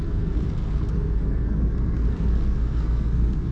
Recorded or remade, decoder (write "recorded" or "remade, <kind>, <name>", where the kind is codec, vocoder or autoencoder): remade, codec, SNAC